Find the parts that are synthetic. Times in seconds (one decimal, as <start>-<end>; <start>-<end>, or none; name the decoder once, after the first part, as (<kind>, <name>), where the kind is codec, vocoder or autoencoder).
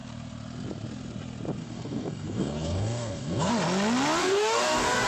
1.6-3.5 (codec, DAC); 4.2-5.1